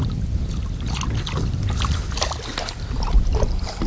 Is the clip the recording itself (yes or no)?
yes